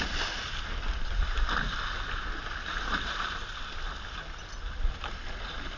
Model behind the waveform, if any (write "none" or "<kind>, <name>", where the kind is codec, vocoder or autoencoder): none